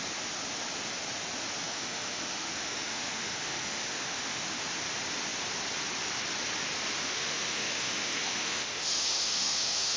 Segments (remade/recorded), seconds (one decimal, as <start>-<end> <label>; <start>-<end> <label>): 0.0-1.7 recorded; 1.7-4.6 remade; 4.6-7.0 recorded; 7.0-10.0 remade